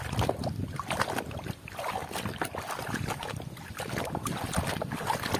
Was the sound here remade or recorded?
recorded